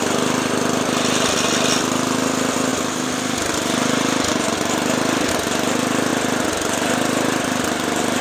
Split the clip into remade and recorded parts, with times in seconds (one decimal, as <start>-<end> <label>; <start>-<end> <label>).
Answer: 0.0-8.2 recorded